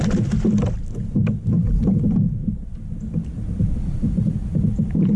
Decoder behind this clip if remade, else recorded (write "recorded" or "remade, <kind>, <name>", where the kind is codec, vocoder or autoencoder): remade, vocoder, BigVGAN v2